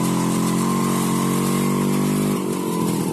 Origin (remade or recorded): recorded